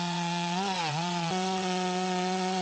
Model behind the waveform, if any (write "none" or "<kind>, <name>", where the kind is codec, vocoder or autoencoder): vocoder, WaveNeXt